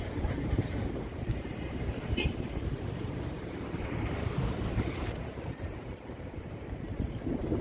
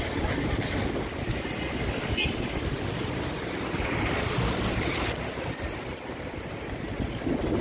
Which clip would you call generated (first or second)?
first